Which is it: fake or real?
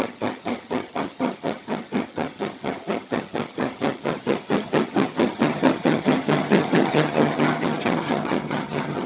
fake